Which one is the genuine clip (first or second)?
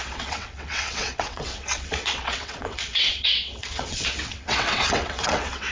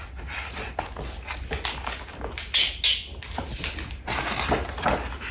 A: second